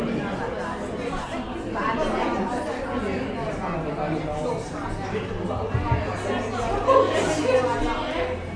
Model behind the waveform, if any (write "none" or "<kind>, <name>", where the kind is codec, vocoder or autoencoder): none